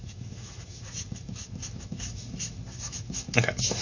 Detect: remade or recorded remade